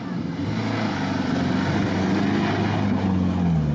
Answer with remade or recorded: recorded